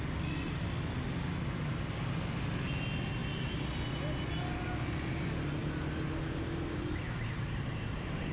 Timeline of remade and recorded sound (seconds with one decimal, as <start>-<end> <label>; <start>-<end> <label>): 0.0-8.3 recorded